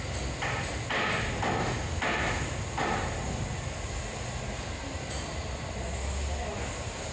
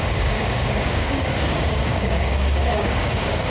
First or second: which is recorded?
first